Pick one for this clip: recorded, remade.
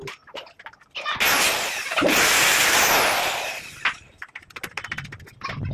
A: recorded